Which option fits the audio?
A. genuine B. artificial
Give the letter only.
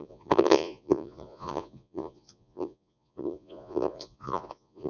B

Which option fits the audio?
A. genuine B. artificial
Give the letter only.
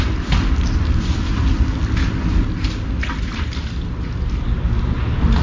A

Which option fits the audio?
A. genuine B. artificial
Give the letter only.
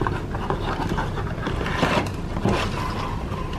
A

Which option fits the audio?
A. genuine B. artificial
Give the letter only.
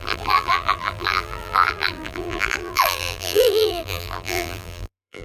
B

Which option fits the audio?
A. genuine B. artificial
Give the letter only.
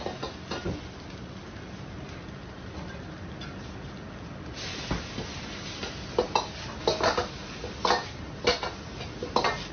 A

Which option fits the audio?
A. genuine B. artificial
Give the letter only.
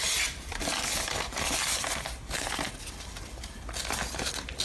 A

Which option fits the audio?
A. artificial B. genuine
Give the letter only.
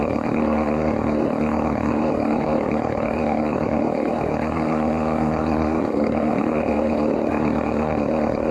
A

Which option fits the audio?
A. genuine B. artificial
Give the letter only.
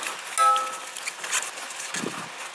A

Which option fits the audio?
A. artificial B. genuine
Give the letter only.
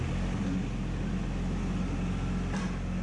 B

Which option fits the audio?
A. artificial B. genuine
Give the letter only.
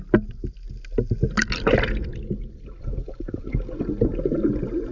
B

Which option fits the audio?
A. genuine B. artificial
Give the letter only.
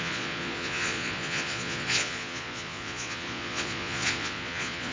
B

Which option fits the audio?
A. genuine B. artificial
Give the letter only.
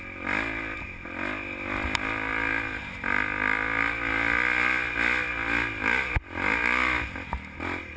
A